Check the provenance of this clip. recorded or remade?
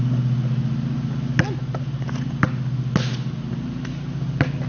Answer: recorded